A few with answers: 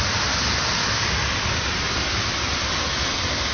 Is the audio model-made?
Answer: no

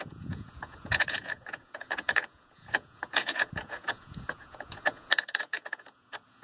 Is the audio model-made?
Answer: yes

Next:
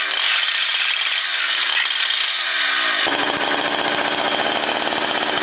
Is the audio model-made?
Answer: no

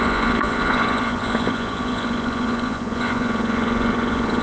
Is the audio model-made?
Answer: yes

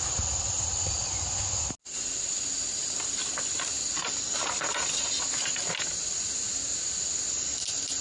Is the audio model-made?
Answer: no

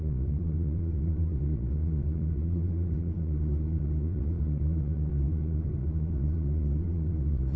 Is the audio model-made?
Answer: yes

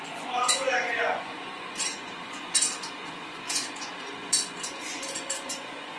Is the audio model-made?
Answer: yes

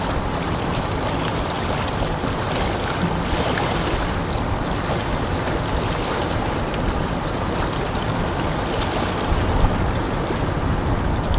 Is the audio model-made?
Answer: no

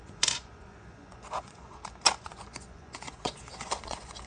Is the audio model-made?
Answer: yes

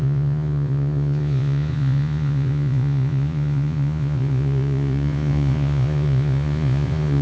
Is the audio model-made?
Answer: yes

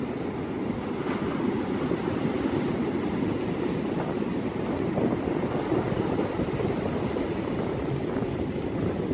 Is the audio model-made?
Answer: no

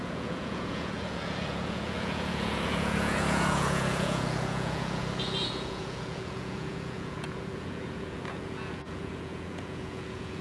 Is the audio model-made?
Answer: yes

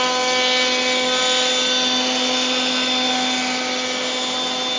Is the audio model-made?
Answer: no